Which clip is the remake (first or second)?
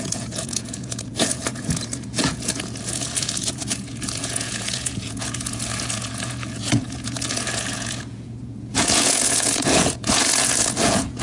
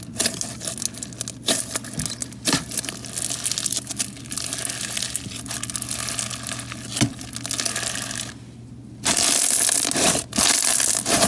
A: first